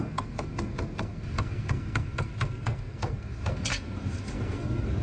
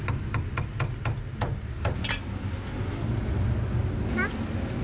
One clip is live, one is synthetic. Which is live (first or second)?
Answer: second